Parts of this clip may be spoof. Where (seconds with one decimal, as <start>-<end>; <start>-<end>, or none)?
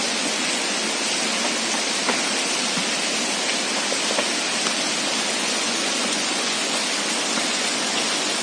0.0-0.8; 5.3-6.8; 7.5-8.4